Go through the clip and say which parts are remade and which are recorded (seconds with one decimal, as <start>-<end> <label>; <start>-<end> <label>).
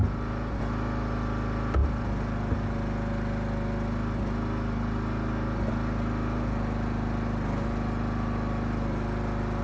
0.0-9.6 recorded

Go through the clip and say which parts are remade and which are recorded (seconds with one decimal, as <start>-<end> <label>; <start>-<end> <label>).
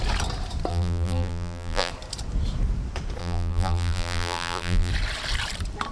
0.0-0.7 recorded; 0.7-1.9 remade; 1.9-3.2 recorded; 3.2-4.9 remade; 4.9-5.9 recorded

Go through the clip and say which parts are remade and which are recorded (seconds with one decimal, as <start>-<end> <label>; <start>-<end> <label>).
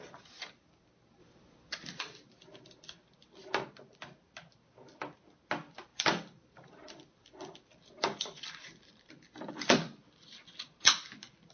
0.0-1.2 recorded; 1.2-2.0 remade; 2.0-5.9 recorded; 5.9-9.5 remade; 9.5-11.5 recorded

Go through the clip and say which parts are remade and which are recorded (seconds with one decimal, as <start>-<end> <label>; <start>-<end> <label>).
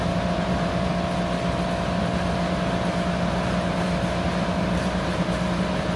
0.0-0.9 remade; 0.9-4.5 recorded; 4.5-6.0 remade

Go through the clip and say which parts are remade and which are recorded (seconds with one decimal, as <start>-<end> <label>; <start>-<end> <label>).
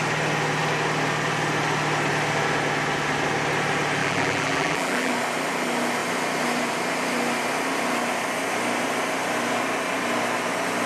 0.0-4.0 recorded; 4.0-5.1 remade; 5.1-10.9 recorded